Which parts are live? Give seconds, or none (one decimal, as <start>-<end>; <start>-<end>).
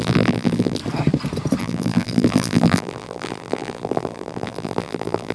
0.8-1.6